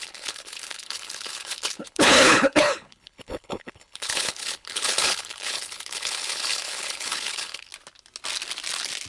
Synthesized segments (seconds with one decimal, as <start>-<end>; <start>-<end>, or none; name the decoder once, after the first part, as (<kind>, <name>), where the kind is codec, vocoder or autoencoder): 0.0-7.7 (codec, HILCodec)